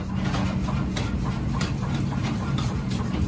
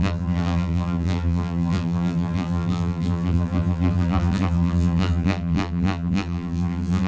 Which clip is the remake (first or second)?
second